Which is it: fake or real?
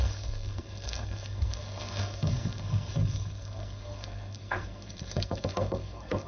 fake